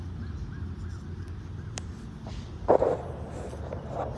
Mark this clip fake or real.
real